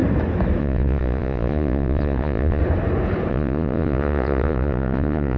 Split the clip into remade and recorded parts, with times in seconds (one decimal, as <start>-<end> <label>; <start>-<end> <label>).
0.0-0.6 recorded; 0.6-2.6 remade; 2.6-3.3 recorded; 3.3-5.4 remade